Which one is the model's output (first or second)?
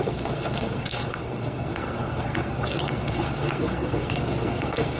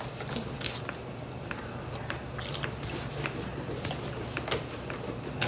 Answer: first